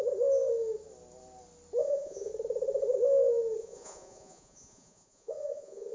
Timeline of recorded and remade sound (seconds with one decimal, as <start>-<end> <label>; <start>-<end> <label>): 0.0-1.8 recorded; 1.8-2.3 remade; 2.3-3.6 recorded; 3.6-5.9 remade